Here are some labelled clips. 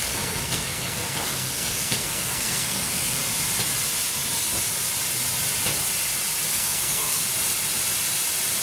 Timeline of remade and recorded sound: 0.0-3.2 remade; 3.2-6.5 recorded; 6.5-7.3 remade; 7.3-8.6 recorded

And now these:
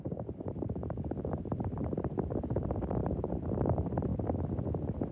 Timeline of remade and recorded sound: 0.0-4.1 remade; 4.1-5.1 recorded

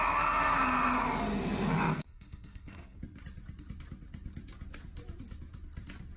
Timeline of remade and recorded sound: 0.0-1.9 recorded; 1.9-3.0 remade; 3.0-6.2 recorded